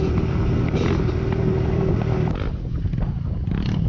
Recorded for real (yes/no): yes